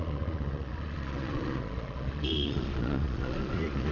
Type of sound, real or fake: fake